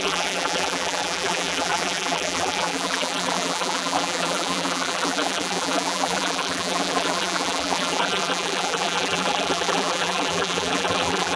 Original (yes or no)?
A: no